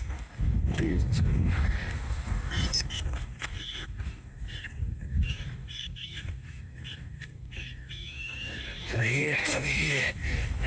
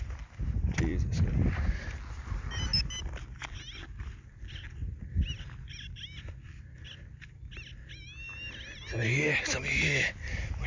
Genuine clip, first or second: second